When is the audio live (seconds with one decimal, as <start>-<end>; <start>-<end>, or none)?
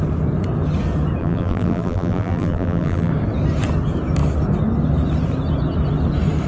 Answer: 0.0-1.2; 3.1-6.5